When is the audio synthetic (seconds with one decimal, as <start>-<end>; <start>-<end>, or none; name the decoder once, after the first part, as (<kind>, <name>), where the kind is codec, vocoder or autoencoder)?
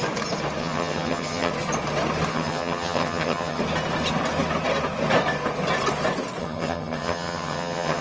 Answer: 0.6-1.5 (vocoder, HiFi-GAN); 2.3-3.6; 6.4-8.0